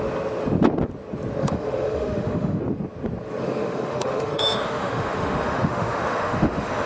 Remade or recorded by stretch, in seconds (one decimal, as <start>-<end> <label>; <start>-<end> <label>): 0.0-1.4 recorded; 1.4-2.6 remade; 2.6-3.4 recorded; 3.4-6.9 remade